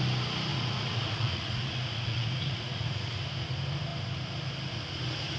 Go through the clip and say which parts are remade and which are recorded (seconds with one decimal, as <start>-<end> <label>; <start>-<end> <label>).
0.0-0.5 recorded; 0.5-3.2 remade; 3.2-5.4 recorded